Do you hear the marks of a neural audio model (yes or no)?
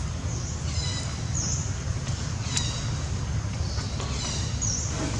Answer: no